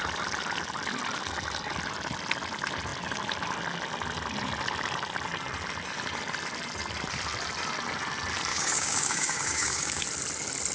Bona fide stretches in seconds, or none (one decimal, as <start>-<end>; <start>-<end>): 0.0-8.5; 10.0-10.7